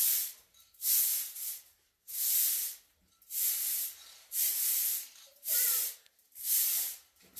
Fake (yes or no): yes